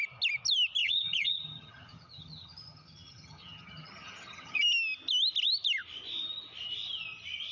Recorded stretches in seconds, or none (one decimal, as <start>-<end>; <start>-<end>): 0.0-0.8; 4.6-7.5